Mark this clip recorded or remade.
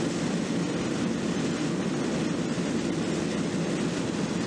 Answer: recorded